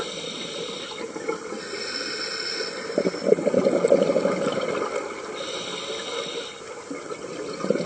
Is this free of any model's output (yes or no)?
yes